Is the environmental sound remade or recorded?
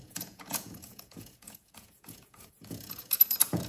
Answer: remade